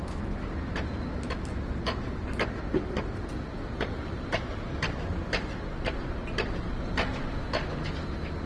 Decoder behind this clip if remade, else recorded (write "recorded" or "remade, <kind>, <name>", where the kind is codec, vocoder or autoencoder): recorded